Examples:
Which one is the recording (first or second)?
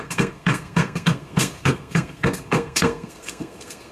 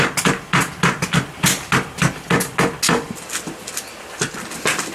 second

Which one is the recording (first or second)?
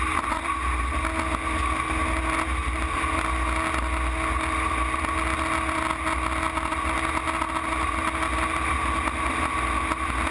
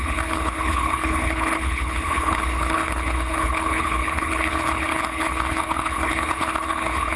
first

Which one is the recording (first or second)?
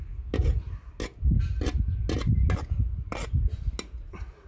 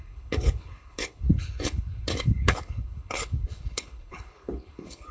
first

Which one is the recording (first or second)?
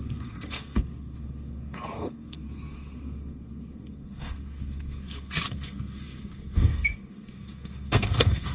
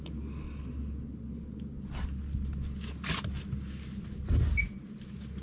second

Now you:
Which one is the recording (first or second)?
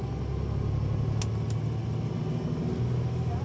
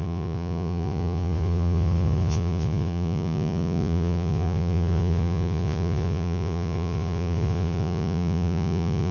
first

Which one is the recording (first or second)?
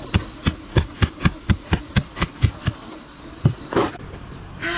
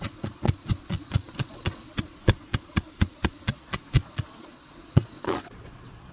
first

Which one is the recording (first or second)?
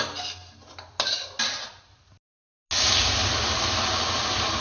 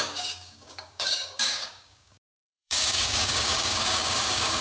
first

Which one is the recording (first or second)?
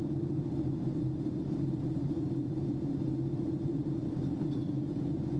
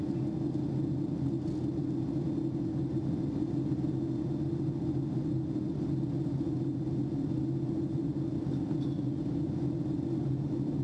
second